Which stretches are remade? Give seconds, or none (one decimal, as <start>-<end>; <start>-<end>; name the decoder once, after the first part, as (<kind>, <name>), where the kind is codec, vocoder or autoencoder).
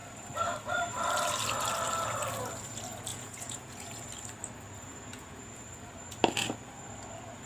3.1-3.9 (vocoder, Vocos); 4.9-5.6